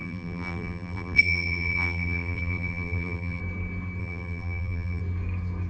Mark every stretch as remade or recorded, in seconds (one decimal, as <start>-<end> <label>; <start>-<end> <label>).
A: 0.0-3.4 remade; 3.4-4.0 recorded; 4.0-5.0 remade; 5.0-5.7 recorded